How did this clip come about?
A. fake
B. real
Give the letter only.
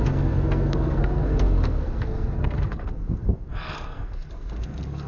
A